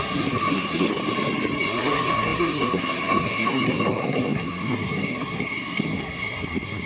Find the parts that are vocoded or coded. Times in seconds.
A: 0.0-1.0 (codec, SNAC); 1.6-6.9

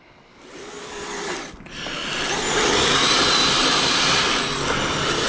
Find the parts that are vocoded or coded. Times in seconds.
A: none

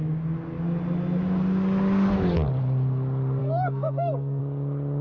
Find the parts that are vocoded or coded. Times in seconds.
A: 3.4-4.4 (codec, SNAC)

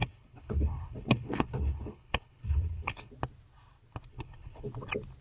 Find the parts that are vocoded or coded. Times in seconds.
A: 0.0-3.1 (codec, HILCodec); 4.1-4.7

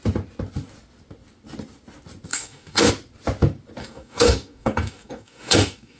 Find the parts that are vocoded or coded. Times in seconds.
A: 2.3-2.9 (codec, DAC); 3.8-6.0

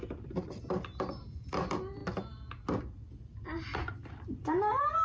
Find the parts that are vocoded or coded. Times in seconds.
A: 0.0-2.0 (vocoder, BigVGAN v2); 2.8-3.8; 4.5-5.0

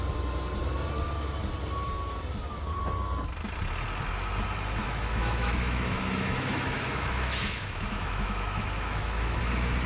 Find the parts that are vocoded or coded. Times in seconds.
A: 4.8-9.4 (autoencoder, DAC-VAE)

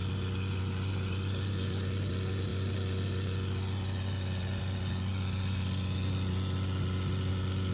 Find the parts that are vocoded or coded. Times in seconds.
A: none